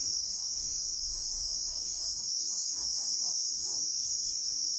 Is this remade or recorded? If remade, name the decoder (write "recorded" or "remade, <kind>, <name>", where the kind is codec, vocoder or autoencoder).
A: remade, codec, DAC